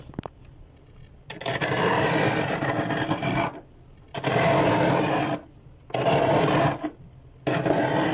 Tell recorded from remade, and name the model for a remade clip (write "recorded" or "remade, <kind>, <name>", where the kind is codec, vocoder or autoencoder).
recorded